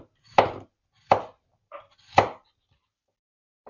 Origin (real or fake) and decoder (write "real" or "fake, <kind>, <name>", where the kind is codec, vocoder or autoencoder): real